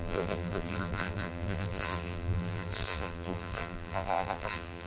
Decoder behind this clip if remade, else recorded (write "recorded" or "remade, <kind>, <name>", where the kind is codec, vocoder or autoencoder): remade, vocoder, BigVGAN v2